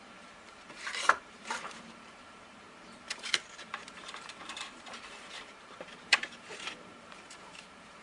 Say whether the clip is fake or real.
fake